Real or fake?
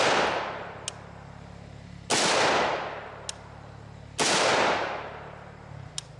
real